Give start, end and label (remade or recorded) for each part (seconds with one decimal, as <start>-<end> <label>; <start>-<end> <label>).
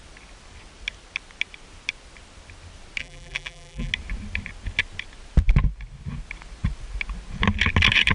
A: 0.0-3.0 recorded; 3.0-3.9 remade; 3.9-8.1 recorded